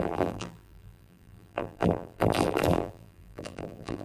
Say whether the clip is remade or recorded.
remade